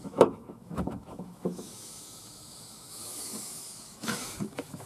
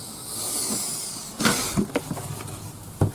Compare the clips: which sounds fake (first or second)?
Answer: first